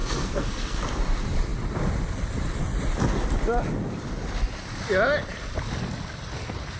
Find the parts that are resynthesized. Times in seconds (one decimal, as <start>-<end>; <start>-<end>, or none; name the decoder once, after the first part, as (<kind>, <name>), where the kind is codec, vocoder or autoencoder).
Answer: 0.0-0.8 (codec, SNAC)